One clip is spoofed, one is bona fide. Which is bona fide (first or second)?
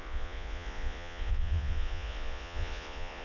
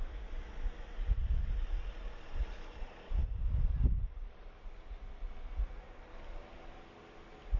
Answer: second